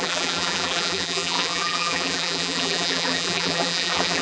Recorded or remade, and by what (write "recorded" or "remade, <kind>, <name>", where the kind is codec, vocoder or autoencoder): remade, vocoder, BigVGAN v2